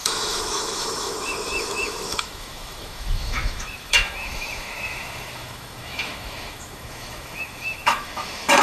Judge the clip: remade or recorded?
remade